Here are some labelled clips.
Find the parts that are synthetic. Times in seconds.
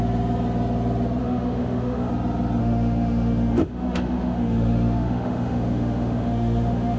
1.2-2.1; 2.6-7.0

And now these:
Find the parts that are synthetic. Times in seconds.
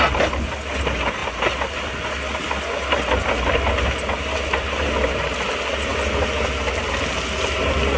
none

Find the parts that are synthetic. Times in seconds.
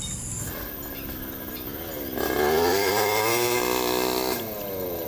none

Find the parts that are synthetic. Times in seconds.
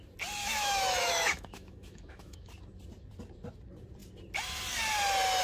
0.4-2.5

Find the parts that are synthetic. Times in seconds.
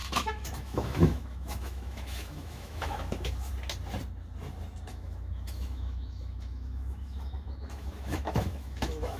0.0-3.5; 4.9-9.2